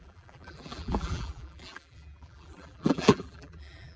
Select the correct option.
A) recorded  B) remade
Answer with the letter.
B